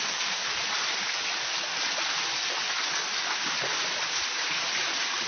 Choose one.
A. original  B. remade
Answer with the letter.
A